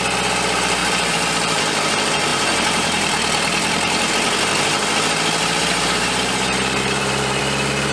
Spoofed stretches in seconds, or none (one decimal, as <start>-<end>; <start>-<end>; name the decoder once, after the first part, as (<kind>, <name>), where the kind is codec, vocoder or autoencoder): 0.8-1.6 (vocoder, BigVGAN v2); 2.3-4.1; 5.4-7.4